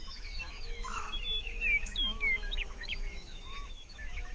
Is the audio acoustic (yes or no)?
no